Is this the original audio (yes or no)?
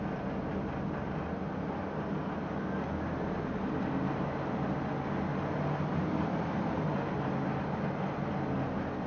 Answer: yes